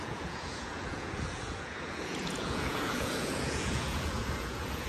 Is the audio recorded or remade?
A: remade